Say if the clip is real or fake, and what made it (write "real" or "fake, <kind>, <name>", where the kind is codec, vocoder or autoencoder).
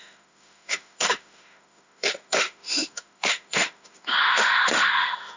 fake, autoencoder, DAC-VAE